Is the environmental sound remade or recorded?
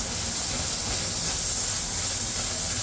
recorded